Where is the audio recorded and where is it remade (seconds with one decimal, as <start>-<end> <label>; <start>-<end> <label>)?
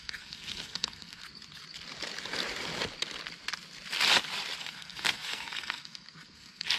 0.0-1.2 remade; 1.2-4.6 recorded; 4.6-6.8 remade